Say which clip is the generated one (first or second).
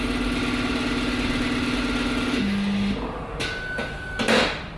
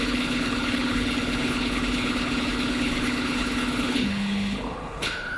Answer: second